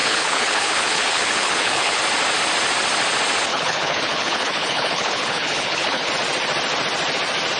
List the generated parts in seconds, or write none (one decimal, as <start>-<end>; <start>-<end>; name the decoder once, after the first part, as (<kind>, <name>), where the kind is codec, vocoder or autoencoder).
0.0-2.0 (codec, HILCodec); 3.5-6.1